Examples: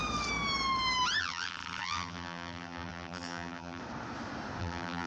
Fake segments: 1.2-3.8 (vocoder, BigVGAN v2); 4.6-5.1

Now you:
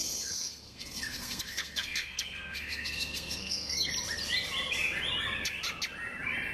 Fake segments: 0.0-3.9 (codec, SNAC)

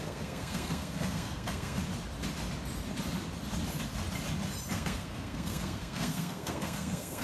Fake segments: 0.0-1.8 (codec, SNAC); 4.7-7.2